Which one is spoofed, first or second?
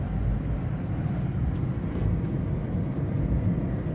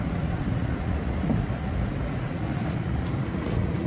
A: second